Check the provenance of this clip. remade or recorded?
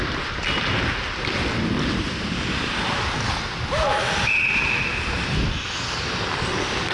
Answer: recorded